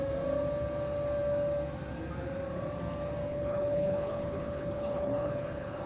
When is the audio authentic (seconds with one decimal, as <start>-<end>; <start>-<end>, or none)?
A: 0.0-3.3